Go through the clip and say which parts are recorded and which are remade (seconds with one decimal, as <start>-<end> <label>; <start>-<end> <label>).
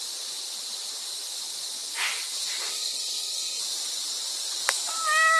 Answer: 0.0-2.7 recorded; 2.7-3.6 remade; 3.6-5.4 recorded